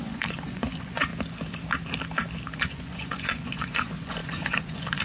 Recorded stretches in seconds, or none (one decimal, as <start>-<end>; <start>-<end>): 1.1-2.6